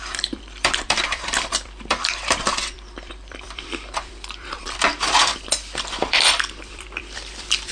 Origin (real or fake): fake